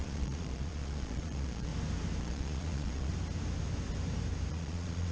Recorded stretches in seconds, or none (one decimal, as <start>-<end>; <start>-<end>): 1.7-2.2; 3.1-4.5